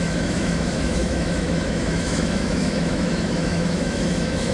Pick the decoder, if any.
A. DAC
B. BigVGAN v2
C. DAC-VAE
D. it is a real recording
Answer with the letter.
C